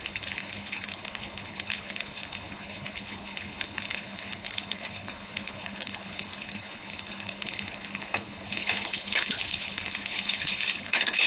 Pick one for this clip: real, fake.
fake